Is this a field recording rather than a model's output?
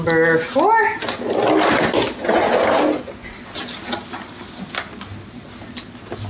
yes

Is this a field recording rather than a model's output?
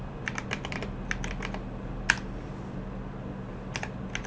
yes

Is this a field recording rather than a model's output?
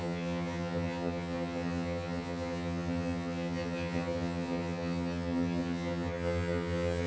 no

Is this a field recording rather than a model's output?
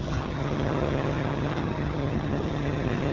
no